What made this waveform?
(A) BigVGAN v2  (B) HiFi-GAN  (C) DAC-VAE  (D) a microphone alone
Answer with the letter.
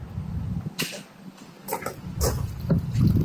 D